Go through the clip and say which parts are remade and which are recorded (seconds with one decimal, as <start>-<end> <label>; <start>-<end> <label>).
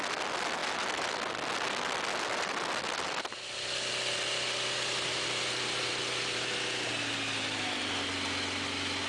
0.0-9.1 recorded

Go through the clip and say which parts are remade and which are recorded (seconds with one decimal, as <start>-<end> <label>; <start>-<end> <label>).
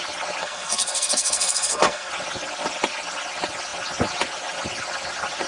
0.0-0.4 recorded; 0.4-2.1 remade; 2.1-5.5 recorded